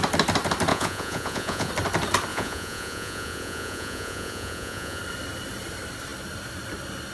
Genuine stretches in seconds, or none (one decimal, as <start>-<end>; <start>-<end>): 0.0-0.7; 1.7-2.3; 5.0-7.1